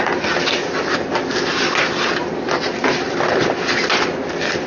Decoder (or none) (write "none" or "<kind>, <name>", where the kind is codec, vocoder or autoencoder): none